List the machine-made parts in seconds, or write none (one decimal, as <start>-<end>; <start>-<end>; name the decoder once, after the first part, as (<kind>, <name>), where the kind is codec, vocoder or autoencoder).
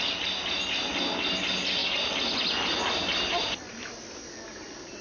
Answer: none